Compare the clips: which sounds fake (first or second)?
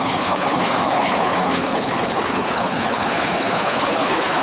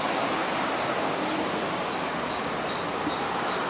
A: first